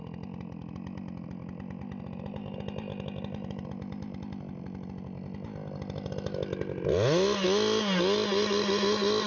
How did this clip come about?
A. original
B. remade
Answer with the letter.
A